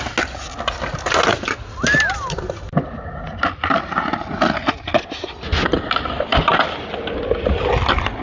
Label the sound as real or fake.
real